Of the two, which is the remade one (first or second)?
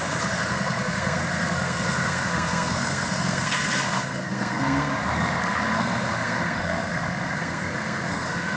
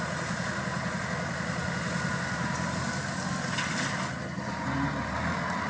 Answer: first